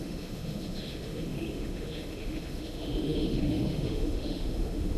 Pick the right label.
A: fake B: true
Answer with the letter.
A